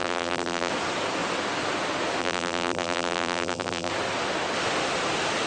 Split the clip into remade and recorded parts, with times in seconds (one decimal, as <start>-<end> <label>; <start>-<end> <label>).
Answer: 0.0-0.7 remade; 0.7-2.2 recorded; 2.2-3.9 remade; 3.9-5.5 recorded

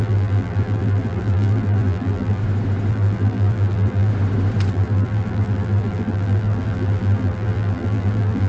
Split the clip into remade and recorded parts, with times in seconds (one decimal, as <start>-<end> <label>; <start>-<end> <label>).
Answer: 0.0-2.4 remade; 2.4-2.9 recorded; 2.9-4.1 remade; 4.1-4.7 recorded; 4.7-8.5 remade